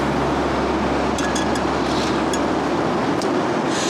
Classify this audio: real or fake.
real